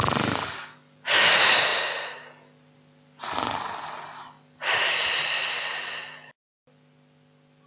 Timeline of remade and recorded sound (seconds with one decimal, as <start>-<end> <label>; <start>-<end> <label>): 0.0-7.7 recorded